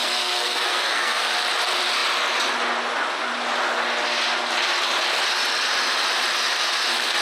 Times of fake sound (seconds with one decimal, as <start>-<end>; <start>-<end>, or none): 0.0-1.3